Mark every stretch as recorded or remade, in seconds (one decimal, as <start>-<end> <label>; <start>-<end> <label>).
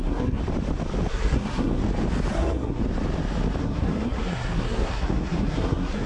0.0-0.4 remade; 0.4-1.1 recorded; 1.1-1.8 remade; 1.8-2.3 recorded; 2.3-2.8 remade; 2.8-3.6 recorded; 3.6-6.1 remade